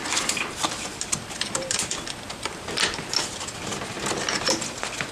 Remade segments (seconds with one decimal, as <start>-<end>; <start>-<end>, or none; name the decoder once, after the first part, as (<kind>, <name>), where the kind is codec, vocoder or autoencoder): 0.0-3.7 (vocoder, BigVGAN v2); 4.6-5.1